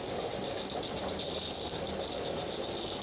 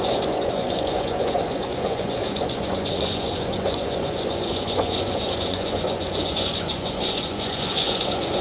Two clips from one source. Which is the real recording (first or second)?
first